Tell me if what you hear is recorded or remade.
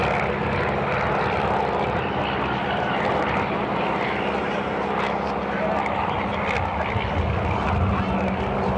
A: recorded